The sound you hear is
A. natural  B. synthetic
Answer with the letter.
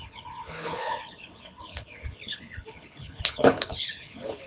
B